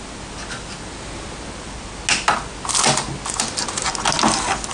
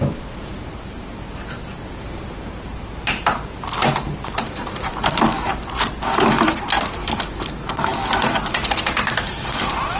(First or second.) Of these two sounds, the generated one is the second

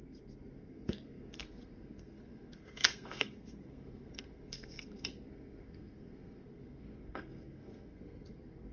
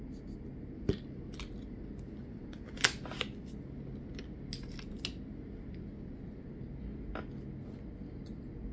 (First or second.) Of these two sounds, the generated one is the first